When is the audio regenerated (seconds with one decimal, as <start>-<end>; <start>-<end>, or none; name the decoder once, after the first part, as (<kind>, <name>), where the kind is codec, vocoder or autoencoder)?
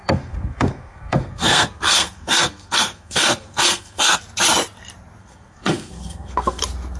0.0-4.2 (codec, SNAC); 5.2-6.6